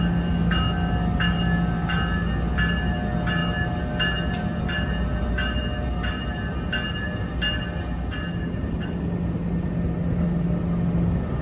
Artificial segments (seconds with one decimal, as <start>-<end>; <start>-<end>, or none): none